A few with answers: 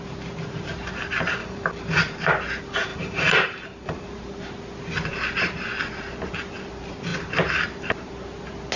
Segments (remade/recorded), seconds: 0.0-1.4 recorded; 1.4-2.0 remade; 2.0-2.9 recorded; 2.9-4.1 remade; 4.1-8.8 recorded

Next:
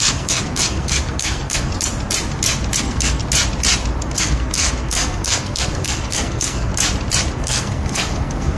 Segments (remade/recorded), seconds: 0.0-1.7 remade; 1.7-2.8 recorded; 2.8-3.2 remade; 3.2-4.2 recorded; 4.2-6.7 remade; 6.7-7.3 recorded; 7.3-8.6 remade

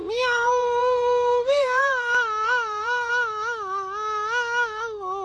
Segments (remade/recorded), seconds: 0.0-3.1 remade; 3.1-5.2 recorded

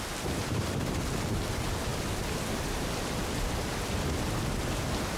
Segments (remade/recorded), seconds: 0.0-0.4 recorded; 0.4-1.1 remade; 1.1-1.9 recorded; 1.9-5.2 remade

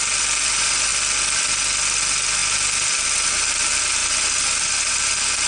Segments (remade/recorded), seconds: 0.0-4.0 recorded; 4.0-4.9 remade; 4.9-5.5 recorded

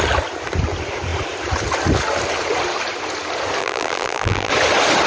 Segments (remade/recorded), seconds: 0.0-3.6 recorded; 3.6-4.5 remade; 4.5-5.1 recorded

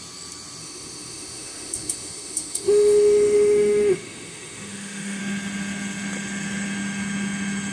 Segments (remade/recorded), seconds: 0.0-0.6 recorded; 0.6-5.2 remade; 5.2-7.7 recorded

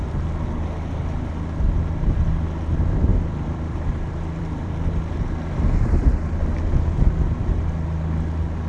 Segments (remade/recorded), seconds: 0.0-3.1 recorded; 3.1-4.7 remade; 4.7-8.7 recorded